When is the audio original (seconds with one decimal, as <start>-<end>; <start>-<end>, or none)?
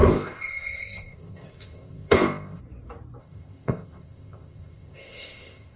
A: 2.6-3.2